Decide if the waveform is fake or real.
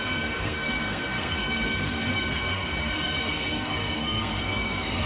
fake